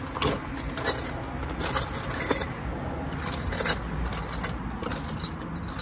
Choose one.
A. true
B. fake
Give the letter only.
A